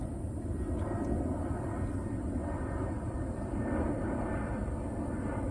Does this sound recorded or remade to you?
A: recorded